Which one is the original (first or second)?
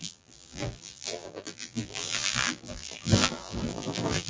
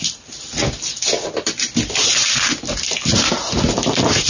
second